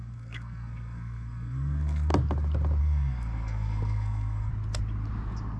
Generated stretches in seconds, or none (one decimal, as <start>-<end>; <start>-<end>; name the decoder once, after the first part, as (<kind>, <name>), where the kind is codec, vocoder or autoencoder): 0.0-2.1 (codec, SNAC); 2.8-4.5